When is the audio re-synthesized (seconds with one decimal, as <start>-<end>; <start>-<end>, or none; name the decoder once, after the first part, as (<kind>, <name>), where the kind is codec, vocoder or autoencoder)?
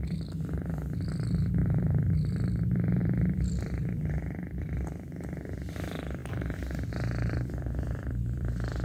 0.0-6.2 (vocoder, BigVGAN v2); 6.9-8.8